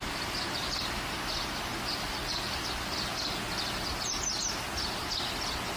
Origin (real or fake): real